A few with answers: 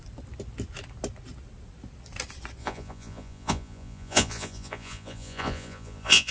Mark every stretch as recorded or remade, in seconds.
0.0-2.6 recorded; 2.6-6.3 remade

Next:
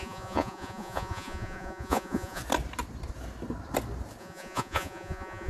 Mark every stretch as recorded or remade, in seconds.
0.0-2.4 remade; 2.4-4.2 recorded; 4.2-5.5 remade

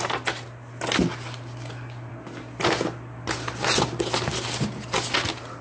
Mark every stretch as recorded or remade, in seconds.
0.0-5.6 recorded

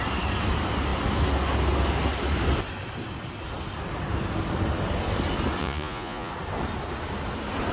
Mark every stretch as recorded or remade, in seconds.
0.0-5.6 recorded; 5.6-6.3 remade; 6.3-7.7 recorded